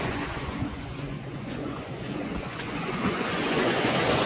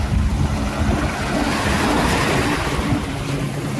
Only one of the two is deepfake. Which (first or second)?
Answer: first